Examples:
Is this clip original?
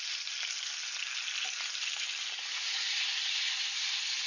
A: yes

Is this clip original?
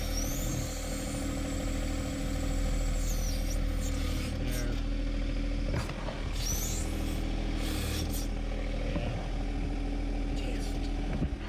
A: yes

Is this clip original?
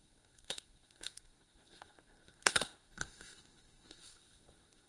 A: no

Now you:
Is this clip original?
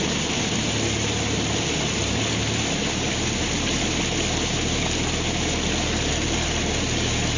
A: yes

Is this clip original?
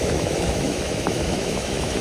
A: no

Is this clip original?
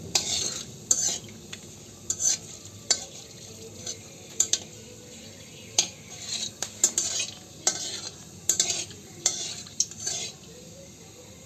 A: yes